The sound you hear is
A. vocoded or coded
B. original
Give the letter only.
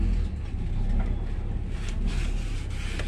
B